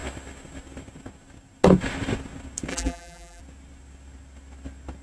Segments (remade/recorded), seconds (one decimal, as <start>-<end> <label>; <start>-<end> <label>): 0.0-2.7 recorded; 2.7-3.4 remade; 3.4-5.0 recorded